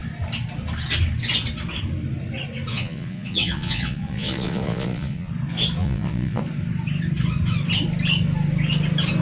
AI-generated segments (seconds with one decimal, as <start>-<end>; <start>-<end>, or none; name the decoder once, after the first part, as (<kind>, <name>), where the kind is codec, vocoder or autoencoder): 2.7-5.3 (vocoder, Vocos); 5.8-6.4